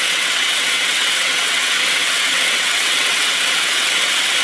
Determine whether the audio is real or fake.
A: fake